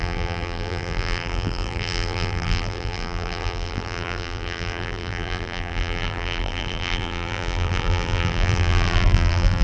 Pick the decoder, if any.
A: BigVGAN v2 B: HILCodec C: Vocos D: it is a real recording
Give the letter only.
A